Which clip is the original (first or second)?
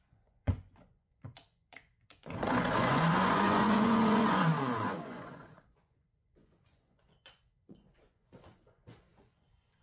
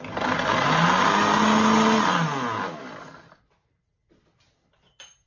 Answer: second